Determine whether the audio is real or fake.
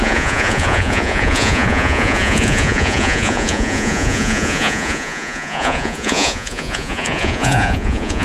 fake